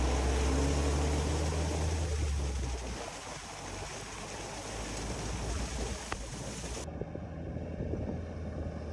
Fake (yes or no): no